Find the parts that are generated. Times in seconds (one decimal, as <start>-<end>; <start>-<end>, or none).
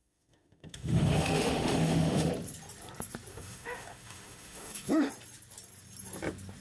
0.0-2.3; 3.3-5.1